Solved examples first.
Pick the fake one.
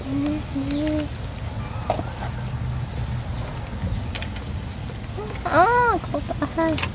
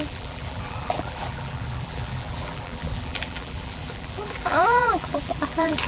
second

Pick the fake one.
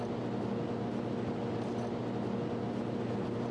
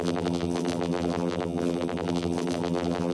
second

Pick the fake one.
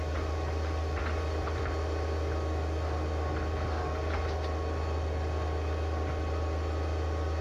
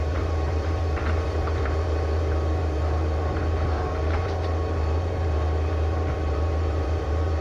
second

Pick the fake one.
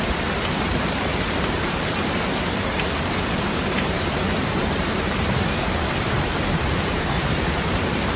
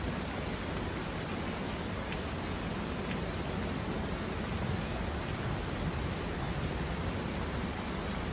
first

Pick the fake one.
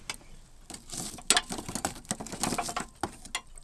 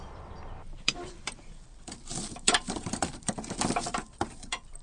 second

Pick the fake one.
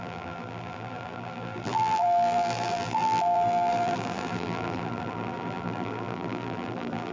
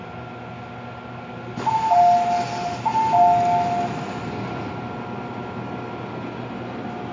first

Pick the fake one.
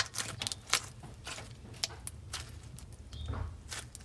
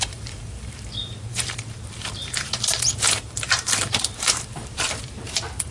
second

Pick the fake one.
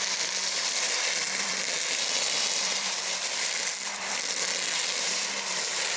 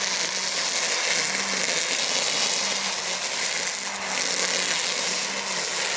first